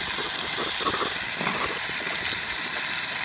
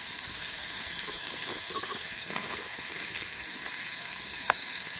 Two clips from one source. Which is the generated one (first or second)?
second